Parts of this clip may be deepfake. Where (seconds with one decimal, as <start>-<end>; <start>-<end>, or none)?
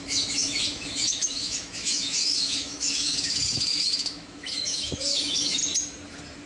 0.0-5.6